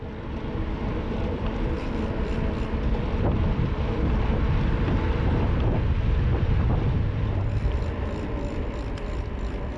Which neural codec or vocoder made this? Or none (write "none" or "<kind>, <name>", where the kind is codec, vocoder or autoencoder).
vocoder, BigVGAN v2